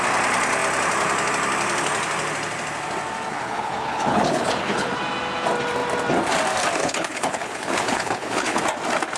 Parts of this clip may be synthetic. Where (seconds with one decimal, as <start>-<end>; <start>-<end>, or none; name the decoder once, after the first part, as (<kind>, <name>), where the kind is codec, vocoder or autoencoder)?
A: 3.3-4.9 (codec, HILCodec); 6.8-8.6